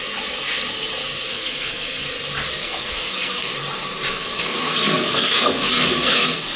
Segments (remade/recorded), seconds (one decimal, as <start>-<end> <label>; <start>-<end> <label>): 0.0-1.3 recorded; 1.3-2.1 remade; 2.1-2.6 recorded; 2.6-3.5 remade; 3.5-4.1 recorded; 4.1-6.6 remade